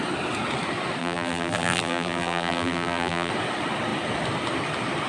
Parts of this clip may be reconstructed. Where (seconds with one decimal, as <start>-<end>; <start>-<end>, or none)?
1.0-3.3